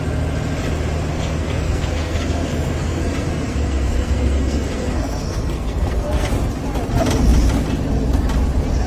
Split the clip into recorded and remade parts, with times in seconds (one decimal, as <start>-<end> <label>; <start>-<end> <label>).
0.0-1.1 recorded; 1.1-6.3 remade; 6.3-8.9 recorded